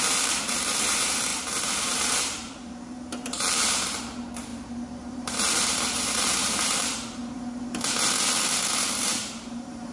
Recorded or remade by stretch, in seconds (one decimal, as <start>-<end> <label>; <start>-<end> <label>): 0.0-4.5 remade; 4.5-5.1 recorded; 5.1-7.2 remade; 7.2-8.7 recorded; 8.7-9.9 remade